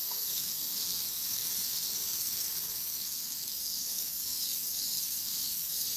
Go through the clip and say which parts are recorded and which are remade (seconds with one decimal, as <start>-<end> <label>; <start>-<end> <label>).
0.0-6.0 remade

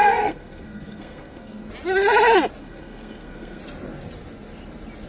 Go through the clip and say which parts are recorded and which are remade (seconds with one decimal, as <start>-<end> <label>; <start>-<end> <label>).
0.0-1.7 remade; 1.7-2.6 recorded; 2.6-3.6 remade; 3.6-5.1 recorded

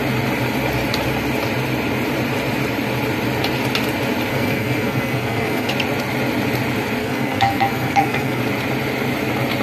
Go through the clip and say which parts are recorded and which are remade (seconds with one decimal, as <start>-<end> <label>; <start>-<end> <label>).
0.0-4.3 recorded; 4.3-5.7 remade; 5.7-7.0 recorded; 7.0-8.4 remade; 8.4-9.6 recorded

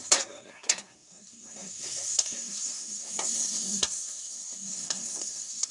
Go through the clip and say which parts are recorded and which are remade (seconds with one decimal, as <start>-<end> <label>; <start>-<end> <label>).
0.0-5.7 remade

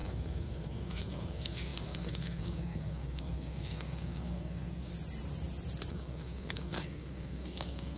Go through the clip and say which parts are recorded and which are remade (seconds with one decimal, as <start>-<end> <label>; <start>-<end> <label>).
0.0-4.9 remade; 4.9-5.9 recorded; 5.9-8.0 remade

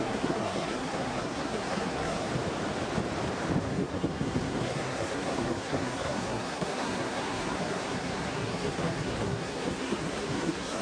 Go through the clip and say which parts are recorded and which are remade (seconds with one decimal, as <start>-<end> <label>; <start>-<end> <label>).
0.0-2.3 remade; 2.3-3.6 recorded; 3.6-10.8 remade